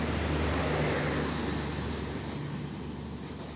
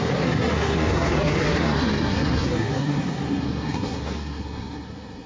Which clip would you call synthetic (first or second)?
second